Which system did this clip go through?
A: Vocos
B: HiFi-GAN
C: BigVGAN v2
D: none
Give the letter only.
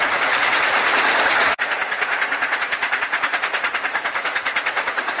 A